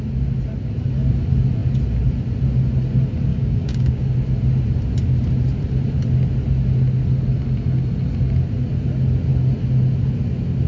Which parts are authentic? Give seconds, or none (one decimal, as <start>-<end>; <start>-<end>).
0.0-3.3; 4.0-10.7